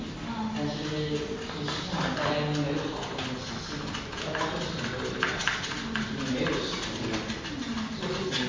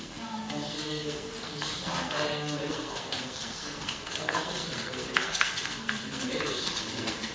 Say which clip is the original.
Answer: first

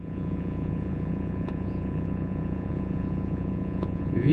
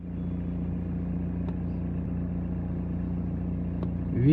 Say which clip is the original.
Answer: second